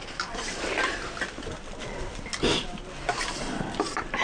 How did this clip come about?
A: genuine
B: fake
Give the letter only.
B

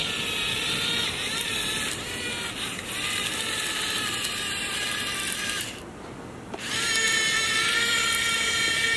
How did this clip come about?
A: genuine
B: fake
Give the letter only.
A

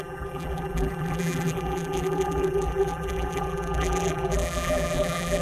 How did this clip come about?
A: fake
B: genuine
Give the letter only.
A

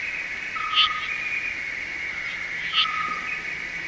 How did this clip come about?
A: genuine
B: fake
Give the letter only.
A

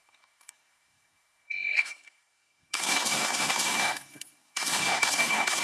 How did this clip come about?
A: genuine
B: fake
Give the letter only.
B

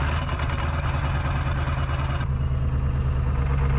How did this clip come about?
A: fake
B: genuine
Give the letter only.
B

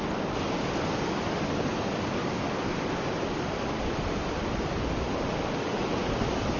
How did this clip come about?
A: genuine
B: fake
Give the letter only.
A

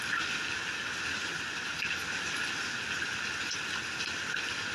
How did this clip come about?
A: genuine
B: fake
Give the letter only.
A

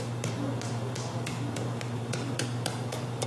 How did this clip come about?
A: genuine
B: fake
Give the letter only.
B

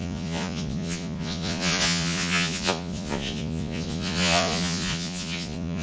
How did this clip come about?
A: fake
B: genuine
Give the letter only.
A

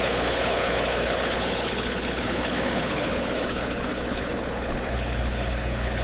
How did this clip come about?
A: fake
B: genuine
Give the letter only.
A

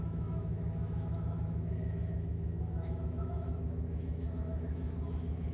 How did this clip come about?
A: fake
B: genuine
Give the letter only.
A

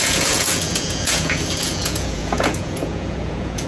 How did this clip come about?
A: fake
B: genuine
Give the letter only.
A